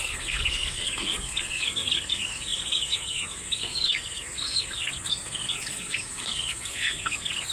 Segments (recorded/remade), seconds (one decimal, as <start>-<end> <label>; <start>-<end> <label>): 0.0-7.5 remade